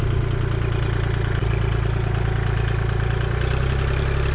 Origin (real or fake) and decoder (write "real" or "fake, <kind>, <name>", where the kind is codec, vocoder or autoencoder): real